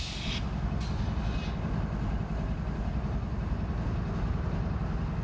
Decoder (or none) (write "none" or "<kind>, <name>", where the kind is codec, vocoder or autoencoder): none